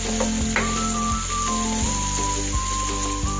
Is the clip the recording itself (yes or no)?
yes